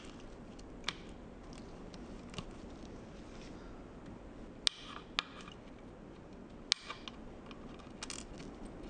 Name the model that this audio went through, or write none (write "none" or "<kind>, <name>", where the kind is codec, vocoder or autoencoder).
none